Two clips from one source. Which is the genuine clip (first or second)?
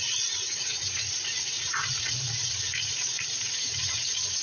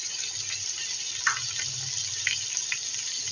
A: second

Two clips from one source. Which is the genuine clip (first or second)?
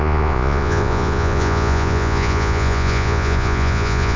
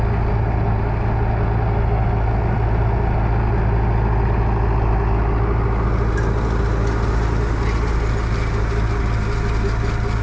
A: second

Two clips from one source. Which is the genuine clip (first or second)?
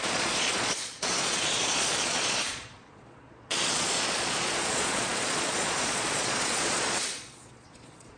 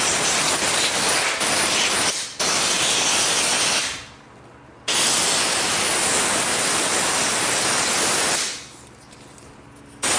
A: second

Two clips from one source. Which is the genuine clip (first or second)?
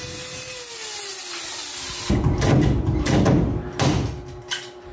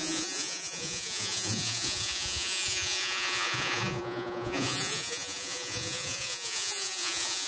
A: first